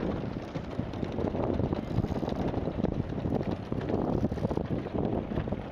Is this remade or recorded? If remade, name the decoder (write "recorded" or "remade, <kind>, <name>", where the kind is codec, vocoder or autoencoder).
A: recorded